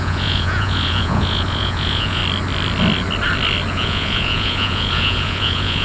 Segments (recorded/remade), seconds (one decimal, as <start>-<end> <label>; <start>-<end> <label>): 0.0-2.2 remade; 2.2-3.7 recorded; 3.7-5.8 remade